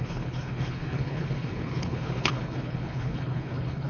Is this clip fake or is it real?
fake